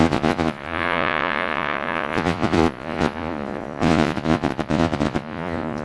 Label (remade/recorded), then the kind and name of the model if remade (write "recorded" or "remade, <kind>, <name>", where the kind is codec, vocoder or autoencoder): remade, vocoder, Vocos